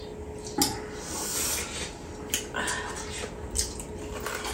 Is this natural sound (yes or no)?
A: yes